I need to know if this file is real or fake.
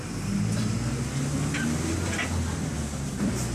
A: real